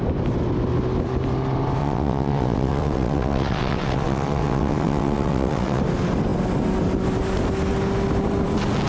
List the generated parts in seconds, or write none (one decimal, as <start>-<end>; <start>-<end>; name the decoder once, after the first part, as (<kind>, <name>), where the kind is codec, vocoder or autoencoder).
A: 1.8-5.8 (vocoder, WaveNeXt)